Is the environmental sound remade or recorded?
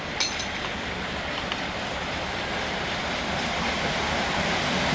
recorded